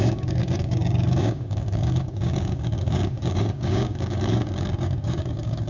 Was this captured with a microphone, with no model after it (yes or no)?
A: no